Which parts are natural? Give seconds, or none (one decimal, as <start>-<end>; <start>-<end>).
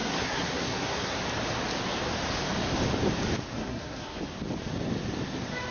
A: 1.2-3.5; 4.2-5.7